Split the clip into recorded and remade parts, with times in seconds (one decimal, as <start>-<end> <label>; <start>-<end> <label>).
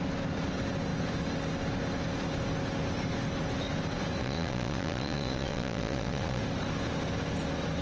0.0-4.2 recorded; 4.2-6.4 remade; 6.4-7.8 recorded